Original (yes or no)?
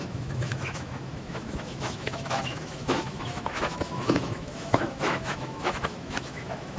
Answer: no